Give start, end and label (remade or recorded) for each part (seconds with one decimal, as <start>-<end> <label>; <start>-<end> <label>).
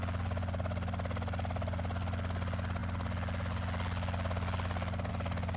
0.0-5.6 recorded